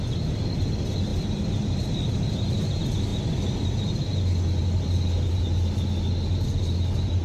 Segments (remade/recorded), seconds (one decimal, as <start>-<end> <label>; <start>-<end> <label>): 0.0-7.2 recorded